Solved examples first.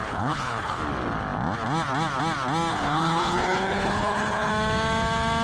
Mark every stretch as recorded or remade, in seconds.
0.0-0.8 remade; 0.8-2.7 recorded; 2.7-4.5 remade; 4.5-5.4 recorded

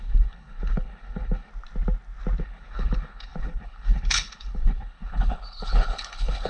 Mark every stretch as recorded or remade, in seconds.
0.0-1.5 remade; 1.5-2.4 recorded; 2.4-6.5 remade